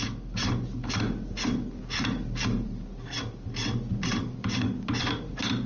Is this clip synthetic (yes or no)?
no